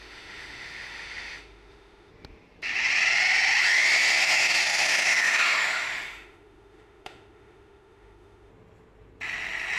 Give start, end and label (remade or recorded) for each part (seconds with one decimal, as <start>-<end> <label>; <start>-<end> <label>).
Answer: 0.0-2.1 remade; 2.1-4.2 recorded; 4.2-8.5 remade; 8.5-9.8 recorded